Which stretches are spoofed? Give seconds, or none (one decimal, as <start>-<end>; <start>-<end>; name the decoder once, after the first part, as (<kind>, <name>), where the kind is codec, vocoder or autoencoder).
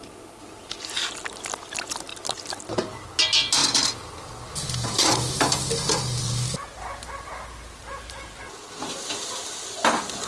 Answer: none